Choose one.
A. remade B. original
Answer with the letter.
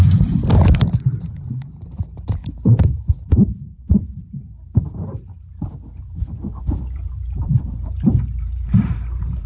A